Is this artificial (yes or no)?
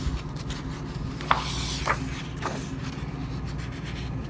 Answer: no